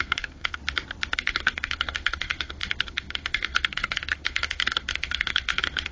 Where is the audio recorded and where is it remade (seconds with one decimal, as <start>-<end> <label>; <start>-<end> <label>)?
0.0-0.6 remade; 0.6-1.1 recorded; 1.1-5.9 remade